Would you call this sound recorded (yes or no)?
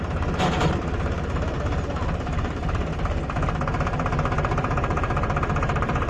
no